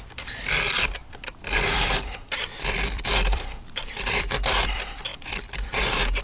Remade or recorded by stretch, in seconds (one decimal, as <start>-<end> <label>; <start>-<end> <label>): 0.0-6.2 remade